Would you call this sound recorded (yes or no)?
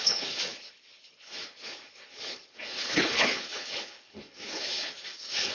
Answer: no